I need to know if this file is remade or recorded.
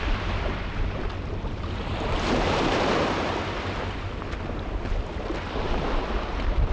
recorded